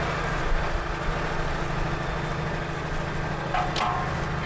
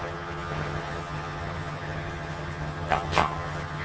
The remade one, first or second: second